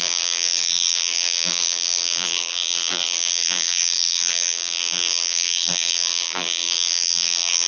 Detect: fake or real fake